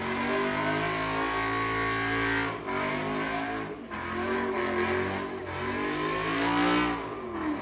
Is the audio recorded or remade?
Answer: recorded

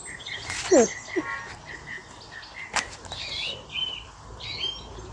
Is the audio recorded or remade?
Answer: recorded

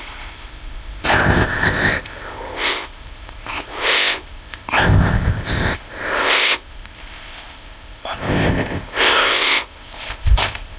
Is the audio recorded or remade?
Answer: remade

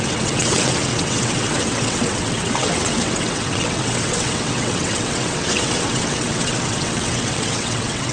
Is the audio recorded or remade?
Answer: remade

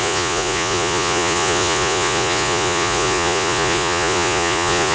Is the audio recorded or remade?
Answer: remade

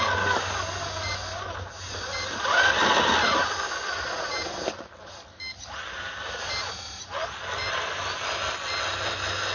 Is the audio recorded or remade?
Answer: recorded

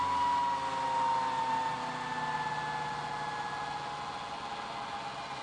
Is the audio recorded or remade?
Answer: recorded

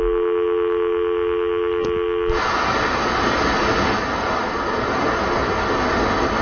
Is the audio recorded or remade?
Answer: recorded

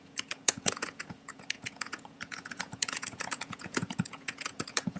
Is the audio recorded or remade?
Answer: remade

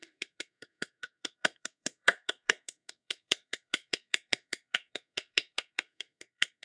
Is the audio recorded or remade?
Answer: remade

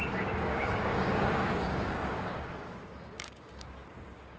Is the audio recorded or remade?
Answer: remade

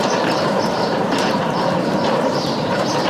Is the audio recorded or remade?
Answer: remade